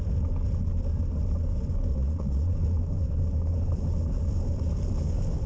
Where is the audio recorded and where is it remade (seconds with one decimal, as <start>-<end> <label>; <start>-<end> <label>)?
0.0-1.9 recorded; 1.9-2.5 remade; 2.5-5.5 recorded